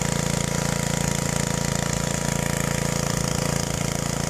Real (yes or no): yes